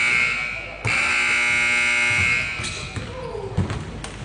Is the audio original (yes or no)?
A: yes